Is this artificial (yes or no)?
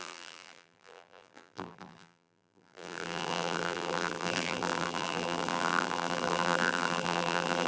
yes